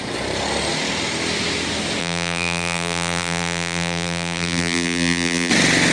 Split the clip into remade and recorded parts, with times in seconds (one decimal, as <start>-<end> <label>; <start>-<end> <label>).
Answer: 0.0-2.0 recorded; 2.0-5.5 remade; 5.5-5.9 recorded